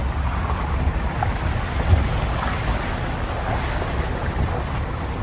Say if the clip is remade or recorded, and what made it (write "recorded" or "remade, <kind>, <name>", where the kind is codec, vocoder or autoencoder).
recorded